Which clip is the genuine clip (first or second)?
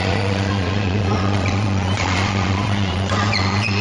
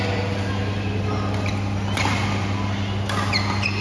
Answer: second